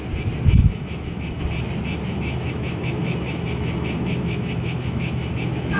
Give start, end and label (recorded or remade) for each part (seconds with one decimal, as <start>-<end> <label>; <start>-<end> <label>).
0.0-0.6 recorded; 0.6-1.4 remade; 1.4-2.1 recorded; 2.1-5.8 remade